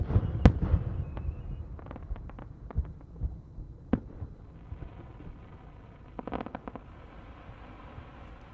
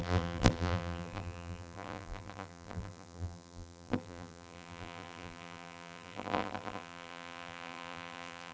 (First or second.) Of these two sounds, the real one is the first